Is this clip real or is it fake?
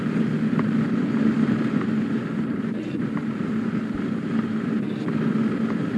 real